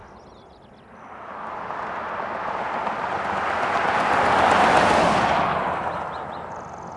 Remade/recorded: recorded